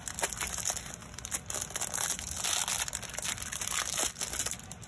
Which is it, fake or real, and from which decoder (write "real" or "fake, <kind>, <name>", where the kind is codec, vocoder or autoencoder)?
real